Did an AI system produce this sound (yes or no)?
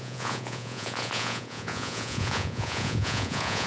yes